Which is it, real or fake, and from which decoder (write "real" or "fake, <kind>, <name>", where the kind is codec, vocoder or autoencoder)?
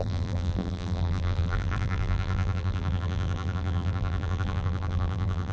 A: fake, vocoder, BigVGAN v2